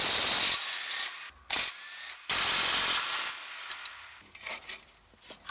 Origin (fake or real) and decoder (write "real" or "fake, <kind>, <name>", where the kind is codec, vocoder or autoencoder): real